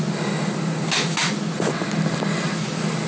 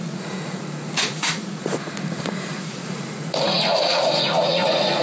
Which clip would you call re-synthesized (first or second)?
second